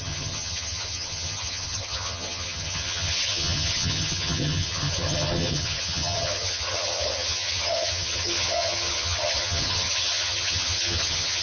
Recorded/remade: remade